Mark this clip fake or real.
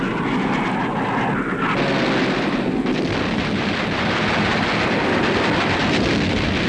real